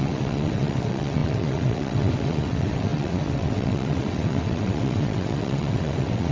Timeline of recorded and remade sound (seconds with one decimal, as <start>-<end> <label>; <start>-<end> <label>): 0.0-6.3 remade